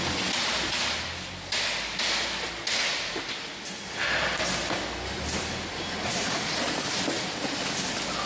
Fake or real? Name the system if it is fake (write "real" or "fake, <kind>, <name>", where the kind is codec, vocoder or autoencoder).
real